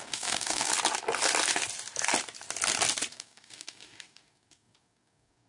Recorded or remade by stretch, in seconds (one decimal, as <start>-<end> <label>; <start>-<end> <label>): 0.0-0.7 remade; 0.7-3.1 recorded; 3.1-5.5 remade